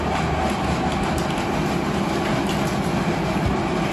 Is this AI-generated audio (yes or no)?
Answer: no